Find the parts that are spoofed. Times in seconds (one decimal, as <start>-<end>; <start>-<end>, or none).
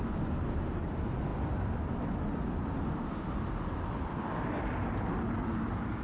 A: none